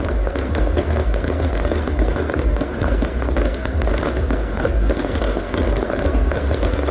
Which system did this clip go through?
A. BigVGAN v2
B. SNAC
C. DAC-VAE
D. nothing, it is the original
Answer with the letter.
B